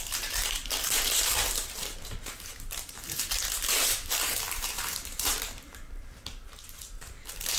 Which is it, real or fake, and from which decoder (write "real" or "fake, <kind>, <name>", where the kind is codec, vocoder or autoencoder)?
fake, vocoder, BigVGAN v2